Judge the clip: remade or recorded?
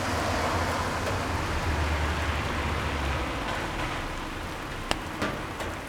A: recorded